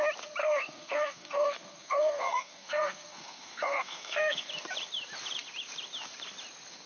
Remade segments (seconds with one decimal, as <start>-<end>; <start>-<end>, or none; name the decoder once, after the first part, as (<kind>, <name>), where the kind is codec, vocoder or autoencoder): 0.4-4.5 (codec, SNAC)